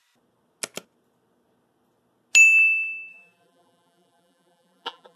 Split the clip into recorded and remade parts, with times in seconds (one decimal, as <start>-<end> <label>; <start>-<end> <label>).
0.0-3.1 recorded; 3.1-5.2 remade